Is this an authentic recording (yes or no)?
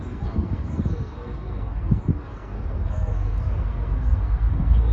no